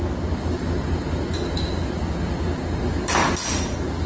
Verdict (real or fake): real